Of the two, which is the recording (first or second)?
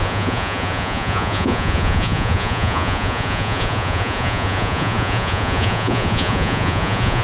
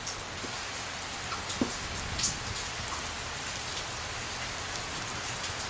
second